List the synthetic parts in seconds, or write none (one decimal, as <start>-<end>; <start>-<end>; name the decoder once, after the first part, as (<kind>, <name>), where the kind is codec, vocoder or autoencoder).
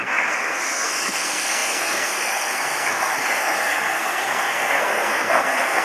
0.0-5.8 (codec, SNAC)